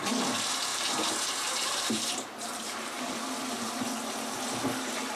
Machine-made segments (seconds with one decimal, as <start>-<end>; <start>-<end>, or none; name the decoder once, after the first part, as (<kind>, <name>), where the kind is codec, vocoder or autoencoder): 0.7-3.0 (vocoder, BigVGAN v2)